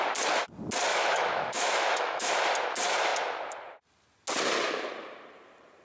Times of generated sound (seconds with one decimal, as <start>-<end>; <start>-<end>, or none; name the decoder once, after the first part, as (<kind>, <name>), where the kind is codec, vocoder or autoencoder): 0.9-2.3 (autoencoder, DAC-VAE)